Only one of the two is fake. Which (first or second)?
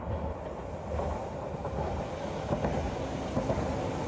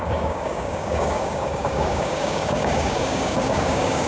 second